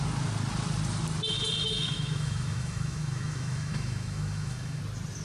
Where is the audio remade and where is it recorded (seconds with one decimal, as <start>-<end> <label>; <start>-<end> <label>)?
0.0-1.7 recorded; 1.7-4.8 remade; 4.8-5.2 recorded